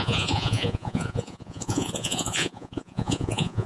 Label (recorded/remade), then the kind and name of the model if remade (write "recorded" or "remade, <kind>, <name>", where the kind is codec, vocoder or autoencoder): remade, vocoder, Vocos